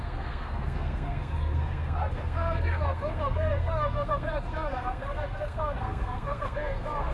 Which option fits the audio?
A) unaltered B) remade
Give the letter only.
B